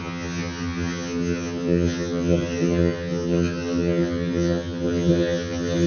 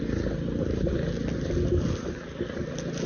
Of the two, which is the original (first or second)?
second